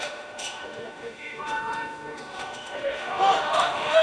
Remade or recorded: remade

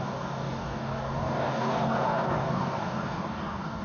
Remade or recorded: remade